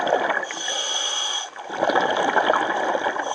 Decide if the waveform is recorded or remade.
recorded